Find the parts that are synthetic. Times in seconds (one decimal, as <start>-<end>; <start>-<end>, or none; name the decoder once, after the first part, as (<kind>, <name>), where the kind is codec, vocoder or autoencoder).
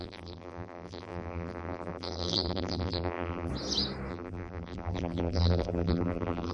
0.0-3.5 (vocoder, BigVGAN v2); 4.1-6.5